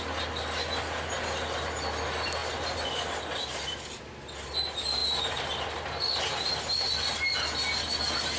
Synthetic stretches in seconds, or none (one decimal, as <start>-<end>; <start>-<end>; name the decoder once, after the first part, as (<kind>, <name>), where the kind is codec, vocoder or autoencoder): none